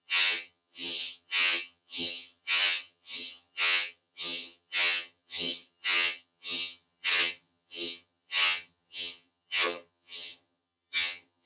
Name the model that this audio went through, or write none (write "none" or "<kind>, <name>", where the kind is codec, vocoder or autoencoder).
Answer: vocoder, HiFi-GAN